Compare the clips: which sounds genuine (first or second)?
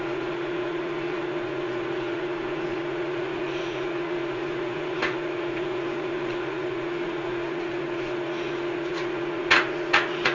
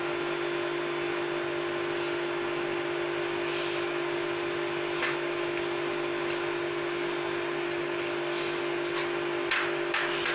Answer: second